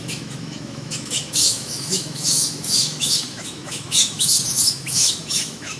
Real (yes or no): no